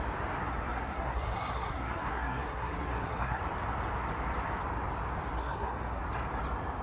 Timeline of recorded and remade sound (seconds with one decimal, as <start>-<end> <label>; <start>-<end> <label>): 0.0-0.4 recorded; 0.4-3.4 remade; 3.4-5.4 recorded; 5.4-6.0 remade; 6.0-6.8 recorded